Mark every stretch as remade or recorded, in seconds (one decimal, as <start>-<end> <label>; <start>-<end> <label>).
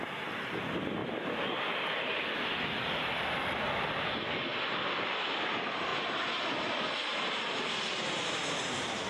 0.0-9.1 recorded